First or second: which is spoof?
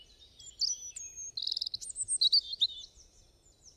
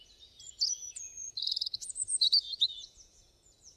second